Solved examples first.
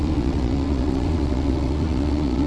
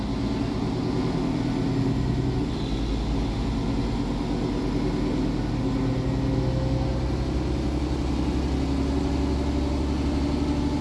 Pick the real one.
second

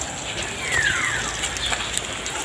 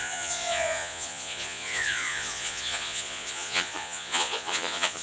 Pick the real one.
first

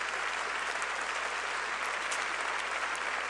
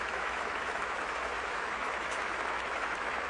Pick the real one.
first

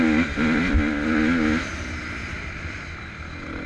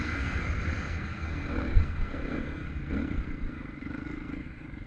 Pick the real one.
first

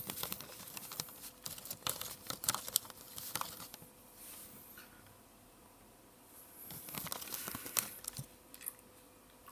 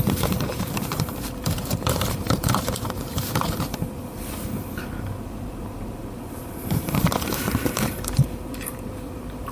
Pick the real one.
first